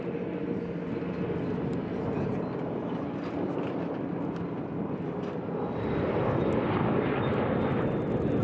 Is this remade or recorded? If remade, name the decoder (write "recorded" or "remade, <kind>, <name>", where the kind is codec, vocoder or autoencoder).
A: recorded